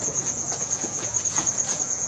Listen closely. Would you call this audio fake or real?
fake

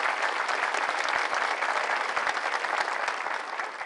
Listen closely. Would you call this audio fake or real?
real